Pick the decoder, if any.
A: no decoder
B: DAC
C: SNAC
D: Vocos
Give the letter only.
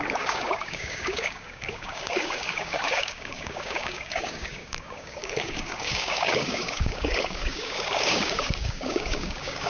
B